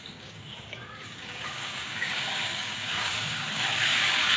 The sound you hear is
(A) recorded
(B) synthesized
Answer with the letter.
B